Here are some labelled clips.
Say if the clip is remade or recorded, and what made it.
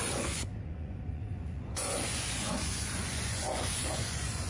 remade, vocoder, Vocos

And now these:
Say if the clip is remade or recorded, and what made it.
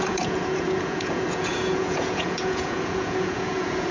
remade, vocoder, Vocos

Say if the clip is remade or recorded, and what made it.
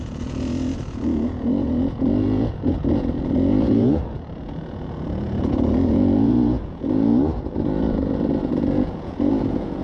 remade, vocoder, Vocos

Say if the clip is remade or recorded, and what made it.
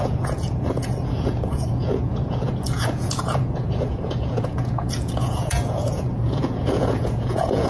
remade, vocoder, Vocos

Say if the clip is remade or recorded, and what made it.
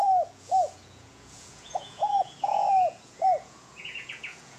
remade, vocoder, Vocos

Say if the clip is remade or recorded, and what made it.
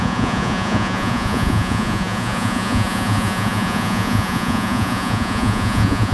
remade, vocoder, Vocos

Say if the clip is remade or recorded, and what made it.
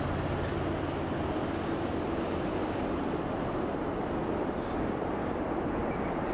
recorded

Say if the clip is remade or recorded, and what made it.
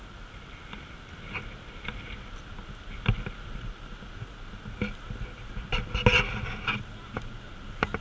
recorded